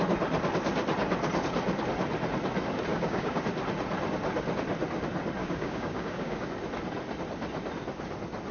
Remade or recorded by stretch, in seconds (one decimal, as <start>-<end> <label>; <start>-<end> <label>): 0.0-2.9 recorded; 2.9-3.4 remade; 3.4-5.4 recorded; 5.4-6.5 remade; 6.5-8.5 recorded

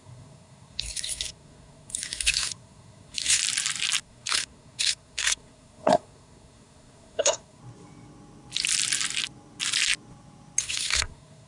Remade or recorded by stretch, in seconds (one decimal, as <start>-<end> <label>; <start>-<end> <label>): 0.0-3.4 remade; 3.4-4.0 recorded; 4.0-7.6 remade; 7.6-10.6 recorded; 10.6-11.5 remade